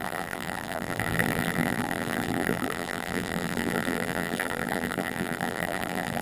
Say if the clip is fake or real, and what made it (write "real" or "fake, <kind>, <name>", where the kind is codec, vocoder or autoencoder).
fake, vocoder, BigVGAN v2